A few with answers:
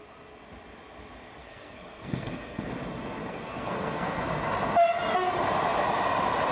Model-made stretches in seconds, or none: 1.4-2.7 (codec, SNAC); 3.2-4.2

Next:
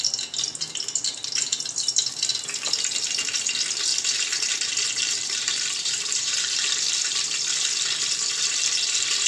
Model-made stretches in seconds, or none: 3.9-6.9 (vocoder, BigVGAN v2)

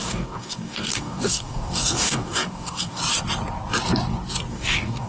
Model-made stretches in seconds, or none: 0.0-3.0 (codec, DAC); 4.5-5.1

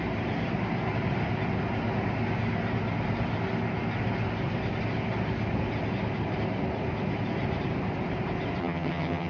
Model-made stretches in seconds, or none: 8.6-9.3 (vocoder, HiFi-GAN)

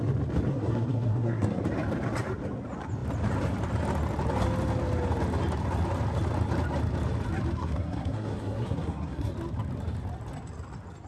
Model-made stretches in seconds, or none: 0.5-1.6 (codec, SNAC); 7.6-9.3

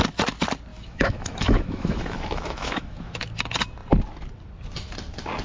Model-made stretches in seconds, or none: 0.7-3.2 (autoencoder, DAC-VAE)